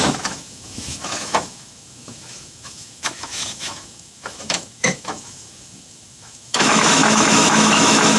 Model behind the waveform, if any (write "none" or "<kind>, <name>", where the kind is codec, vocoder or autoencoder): autoencoder, DAC-VAE